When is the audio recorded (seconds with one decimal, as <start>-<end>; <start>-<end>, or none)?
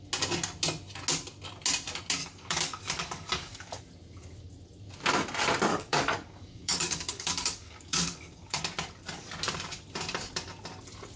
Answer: 0.0-2.2; 3.8-5.7; 8.6-11.2